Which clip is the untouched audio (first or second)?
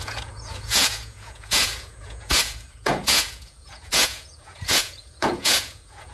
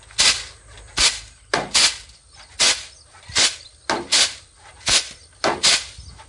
second